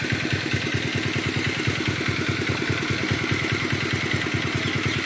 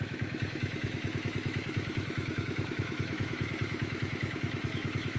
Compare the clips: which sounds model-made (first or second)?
second